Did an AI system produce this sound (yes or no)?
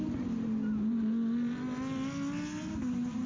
no